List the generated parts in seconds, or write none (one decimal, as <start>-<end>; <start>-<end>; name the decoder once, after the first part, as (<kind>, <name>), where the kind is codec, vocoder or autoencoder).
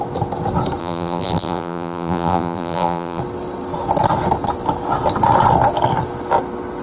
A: 0.8-3.2 (vocoder, BigVGAN v2)